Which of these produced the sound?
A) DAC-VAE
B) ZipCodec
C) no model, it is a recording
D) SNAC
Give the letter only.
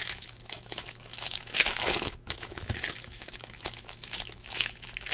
A